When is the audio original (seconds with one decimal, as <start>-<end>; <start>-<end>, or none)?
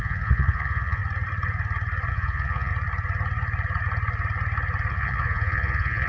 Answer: 1.0-2.1; 2.7-4.9